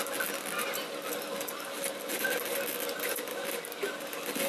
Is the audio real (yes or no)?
yes